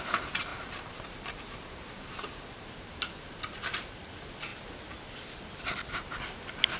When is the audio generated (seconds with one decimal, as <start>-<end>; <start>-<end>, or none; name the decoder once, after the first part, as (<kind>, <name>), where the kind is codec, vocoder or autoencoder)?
0.0-4.5 (vocoder, BigVGAN v2); 5.9-6.8